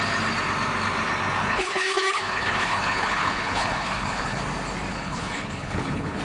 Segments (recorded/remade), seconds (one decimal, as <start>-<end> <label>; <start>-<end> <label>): 0.0-1.4 recorded; 1.4-4.4 remade; 4.4-4.9 recorded; 4.9-6.2 remade